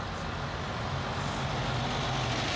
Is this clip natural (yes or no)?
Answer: yes